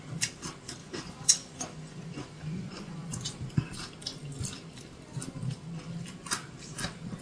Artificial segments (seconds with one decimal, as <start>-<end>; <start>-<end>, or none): 0.8-3.3